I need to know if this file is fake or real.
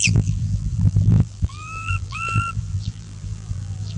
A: fake